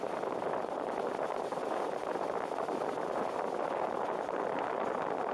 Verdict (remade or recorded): recorded